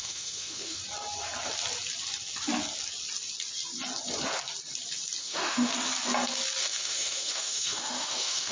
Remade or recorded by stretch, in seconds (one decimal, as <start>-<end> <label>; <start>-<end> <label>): 0.0-0.8 remade; 0.8-5.2 recorded; 5.2-5.7 remade; 5.7-6.6 recorded; 6.6-8.5 remade